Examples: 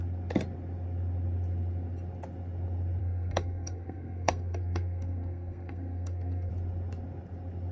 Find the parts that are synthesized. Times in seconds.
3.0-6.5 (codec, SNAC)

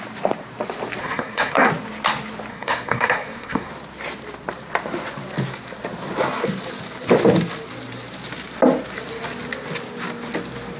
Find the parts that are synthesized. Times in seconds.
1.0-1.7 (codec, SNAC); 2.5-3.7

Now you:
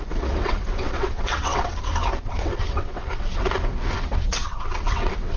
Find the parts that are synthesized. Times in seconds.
0.0-1.7 (vocoder, WaveNeXt); 2.2-5.4